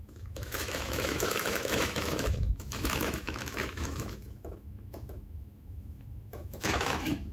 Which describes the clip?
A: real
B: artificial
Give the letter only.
B